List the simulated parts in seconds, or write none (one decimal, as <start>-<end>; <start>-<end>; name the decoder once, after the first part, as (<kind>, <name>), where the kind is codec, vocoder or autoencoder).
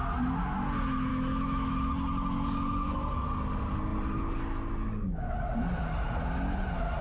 1.1-1.9 (autoencoder, DAC-VAE)